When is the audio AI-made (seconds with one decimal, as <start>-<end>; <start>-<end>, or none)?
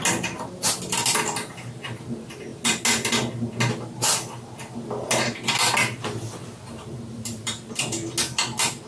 none